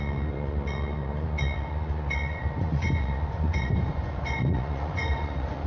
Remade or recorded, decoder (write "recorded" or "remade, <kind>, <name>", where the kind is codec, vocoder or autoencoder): remade, vocoder, Vocos